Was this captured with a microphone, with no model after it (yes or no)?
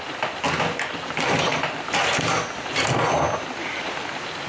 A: yes